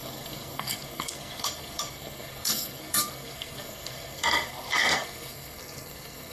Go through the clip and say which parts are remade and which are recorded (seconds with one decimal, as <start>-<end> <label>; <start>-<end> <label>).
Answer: 0.0-6.3 remade